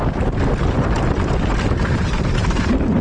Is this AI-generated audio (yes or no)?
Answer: no